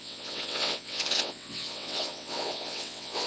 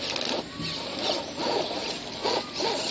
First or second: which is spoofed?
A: first